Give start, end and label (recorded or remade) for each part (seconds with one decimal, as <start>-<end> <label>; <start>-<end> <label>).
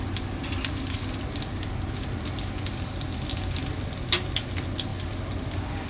0.0-5.9 recorded